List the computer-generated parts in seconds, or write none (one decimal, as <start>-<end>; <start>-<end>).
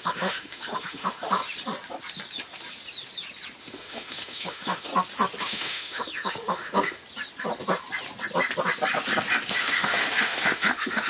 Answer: 0.0-1.4; 3.6-4.9; 5.4-7.0; 9.5-11.1